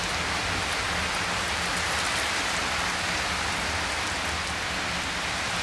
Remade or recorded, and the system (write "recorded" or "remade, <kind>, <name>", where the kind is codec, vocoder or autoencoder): recorded